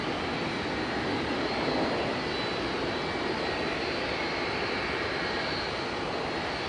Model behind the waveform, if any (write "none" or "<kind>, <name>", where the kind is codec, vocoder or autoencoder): none